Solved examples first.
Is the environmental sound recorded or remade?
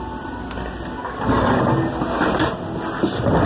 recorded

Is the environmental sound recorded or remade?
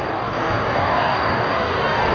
remade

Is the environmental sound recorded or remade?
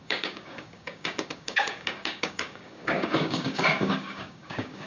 remade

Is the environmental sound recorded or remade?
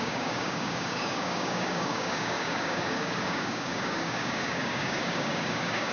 remade